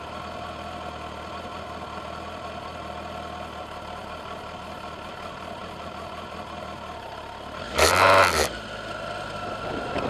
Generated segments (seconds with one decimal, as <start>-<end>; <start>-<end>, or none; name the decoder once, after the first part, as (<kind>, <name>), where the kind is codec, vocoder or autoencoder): none